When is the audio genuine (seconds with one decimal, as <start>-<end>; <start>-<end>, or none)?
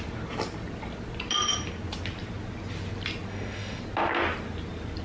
0.0-3.3; 3.8-5.0